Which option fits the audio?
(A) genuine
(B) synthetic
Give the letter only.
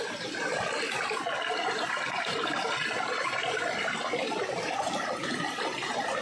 A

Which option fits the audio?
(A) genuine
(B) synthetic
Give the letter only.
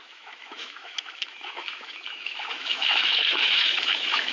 B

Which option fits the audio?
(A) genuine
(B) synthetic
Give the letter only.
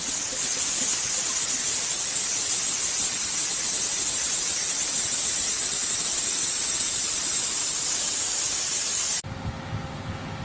A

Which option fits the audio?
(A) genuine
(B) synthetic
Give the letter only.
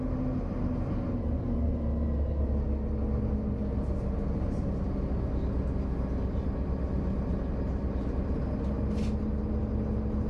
A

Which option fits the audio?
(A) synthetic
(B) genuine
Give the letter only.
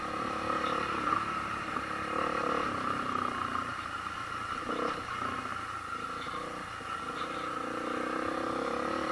B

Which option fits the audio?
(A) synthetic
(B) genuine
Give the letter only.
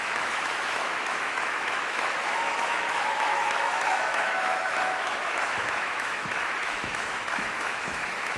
A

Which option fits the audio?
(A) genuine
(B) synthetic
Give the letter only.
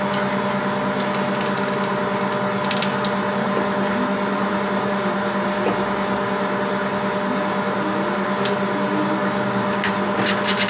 A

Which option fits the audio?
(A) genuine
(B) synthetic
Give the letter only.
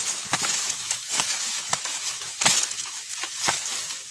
B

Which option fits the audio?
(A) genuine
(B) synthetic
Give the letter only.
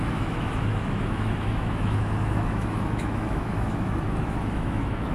B